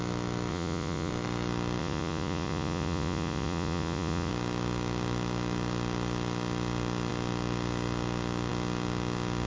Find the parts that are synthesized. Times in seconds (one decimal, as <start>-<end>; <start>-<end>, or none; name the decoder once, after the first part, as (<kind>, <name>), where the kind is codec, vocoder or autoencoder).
0.5-1.1 (vocoder, Vocos); 1.8-4.3